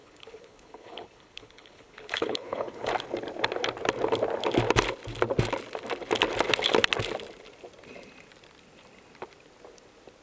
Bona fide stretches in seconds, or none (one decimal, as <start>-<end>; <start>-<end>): 2.9-10.2